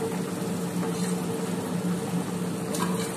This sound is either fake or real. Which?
real